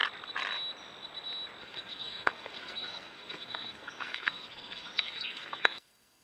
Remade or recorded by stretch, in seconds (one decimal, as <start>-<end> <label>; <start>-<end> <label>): 0.0-1.6 recorded; 1.6-6.2 remade